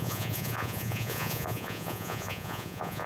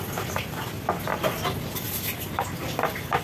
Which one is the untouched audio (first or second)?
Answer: second